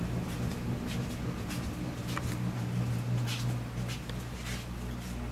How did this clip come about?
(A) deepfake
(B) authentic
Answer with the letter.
B